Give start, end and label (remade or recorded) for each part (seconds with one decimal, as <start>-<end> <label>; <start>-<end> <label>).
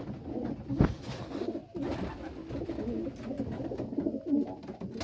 0.0-5.0 recorded